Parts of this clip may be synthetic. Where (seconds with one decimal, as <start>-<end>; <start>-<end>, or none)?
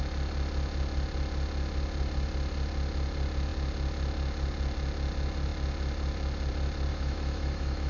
6.9-7.9